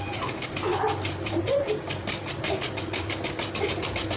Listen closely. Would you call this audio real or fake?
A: real